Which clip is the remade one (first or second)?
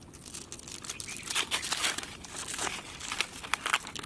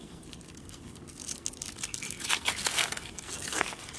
second